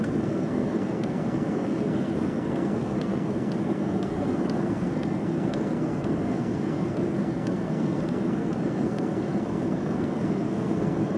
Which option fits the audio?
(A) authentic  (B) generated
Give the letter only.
B